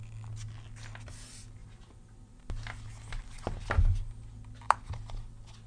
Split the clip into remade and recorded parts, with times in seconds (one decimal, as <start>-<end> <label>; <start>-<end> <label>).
0.0-5.7 recorded